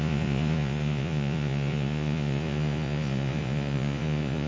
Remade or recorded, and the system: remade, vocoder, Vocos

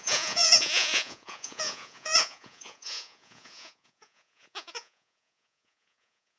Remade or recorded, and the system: remade, vocoder, Vocos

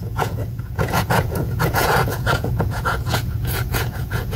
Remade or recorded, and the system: remade, vocoder, Vocos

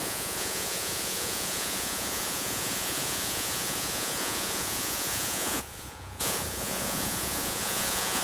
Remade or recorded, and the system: remade, vocoder, Vocos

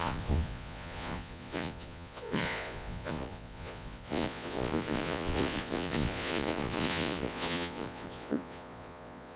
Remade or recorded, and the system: remade, vocoder, Vocos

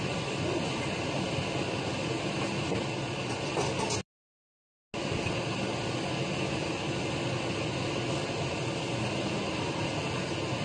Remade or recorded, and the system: recorded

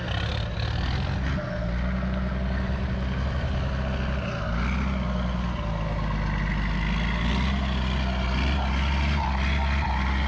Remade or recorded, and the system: recorded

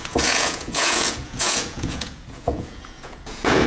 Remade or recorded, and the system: remade, vocoder, Vocos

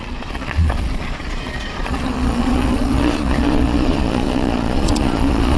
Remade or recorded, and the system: remade, vocoder, Vocos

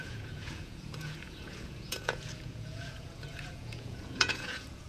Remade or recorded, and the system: remade, vocoder, Vocos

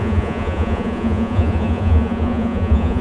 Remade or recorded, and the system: remade, vocoder, Vocos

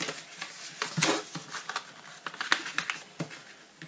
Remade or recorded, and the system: recorded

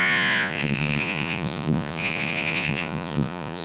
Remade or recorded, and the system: remade, vocoder, Vocos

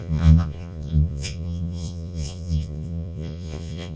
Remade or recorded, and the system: remade, vocoder, Vocos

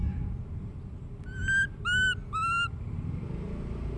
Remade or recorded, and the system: recorded